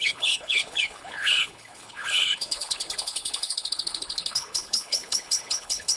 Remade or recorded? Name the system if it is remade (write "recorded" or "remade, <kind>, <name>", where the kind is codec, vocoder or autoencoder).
remade, codec, HILCodec